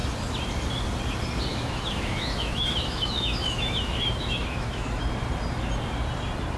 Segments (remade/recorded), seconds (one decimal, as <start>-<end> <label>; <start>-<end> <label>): 0.0-1.5 recorded; 1.5-5.0 remade; 5.0-6.6 recorded